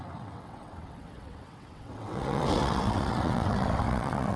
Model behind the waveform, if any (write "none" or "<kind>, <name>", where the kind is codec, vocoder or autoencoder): vocoder, WaveNeXt